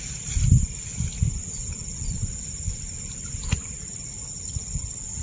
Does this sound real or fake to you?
real